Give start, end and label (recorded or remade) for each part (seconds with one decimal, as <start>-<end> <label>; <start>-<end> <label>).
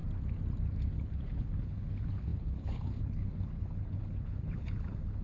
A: 0.0-0.9 recorded; 0.9-5.2 remade